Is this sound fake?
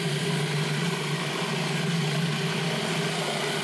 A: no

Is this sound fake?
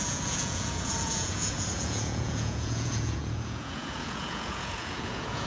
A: yes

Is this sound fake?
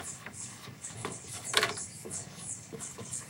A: yes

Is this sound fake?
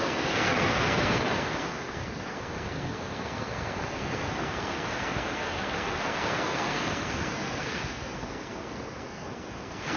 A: yes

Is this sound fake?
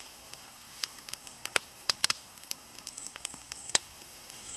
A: yes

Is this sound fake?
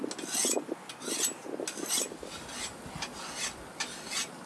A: no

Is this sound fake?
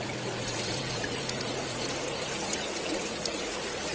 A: yes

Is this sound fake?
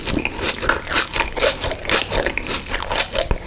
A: no